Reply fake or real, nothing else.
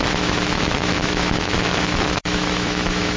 fake